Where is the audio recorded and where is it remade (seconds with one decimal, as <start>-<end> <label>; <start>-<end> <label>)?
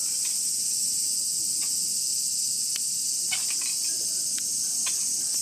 0.0-5.4 recorded